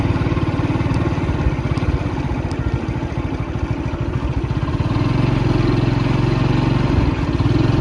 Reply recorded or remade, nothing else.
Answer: recorded